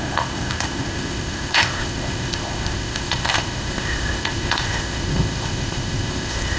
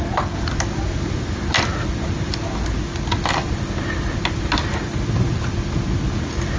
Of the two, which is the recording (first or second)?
second